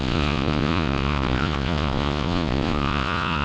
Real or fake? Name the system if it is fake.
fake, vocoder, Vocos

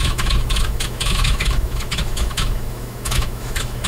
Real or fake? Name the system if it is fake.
fake, autoencoder, DAC-VAE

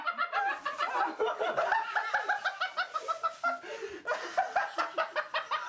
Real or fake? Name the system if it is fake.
real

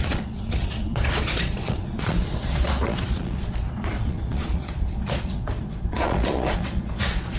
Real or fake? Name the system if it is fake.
fake, vocoder, Vocos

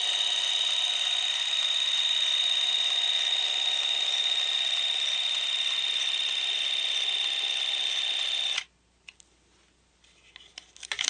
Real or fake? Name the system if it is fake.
real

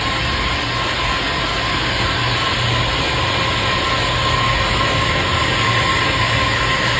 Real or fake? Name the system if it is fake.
real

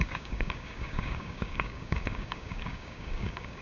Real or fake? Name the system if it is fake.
fake, codec, DAC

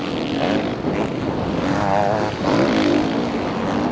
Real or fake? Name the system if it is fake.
real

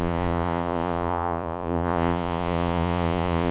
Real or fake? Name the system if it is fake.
fake, vocoder, Vocos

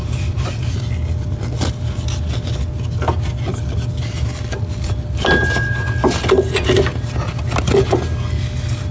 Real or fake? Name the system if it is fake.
real